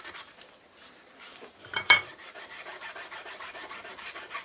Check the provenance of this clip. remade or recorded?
remade